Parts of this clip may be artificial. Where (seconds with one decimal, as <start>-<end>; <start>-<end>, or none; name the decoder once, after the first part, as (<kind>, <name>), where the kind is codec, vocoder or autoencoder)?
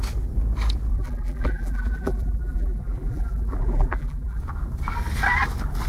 0.9-4.4 (vocoder, BigVGAN v2)